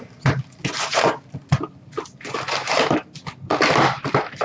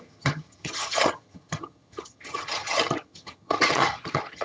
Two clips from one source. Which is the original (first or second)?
first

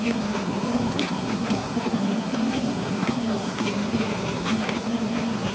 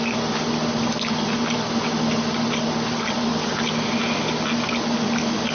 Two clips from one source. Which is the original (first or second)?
second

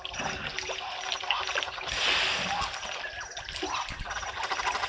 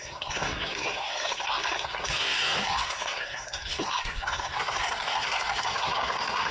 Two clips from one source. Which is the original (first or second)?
first